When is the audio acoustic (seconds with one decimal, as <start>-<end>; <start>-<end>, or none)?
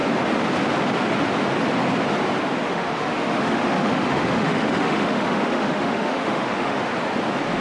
0.0-2.6; 6.8-7.6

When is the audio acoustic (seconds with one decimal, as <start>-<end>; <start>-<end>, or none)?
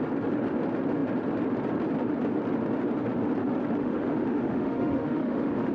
0.0-3.8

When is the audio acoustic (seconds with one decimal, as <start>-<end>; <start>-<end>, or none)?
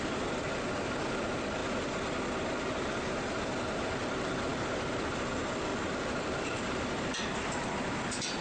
1.6-3.6; 4.5-5.3; 5.7-6.4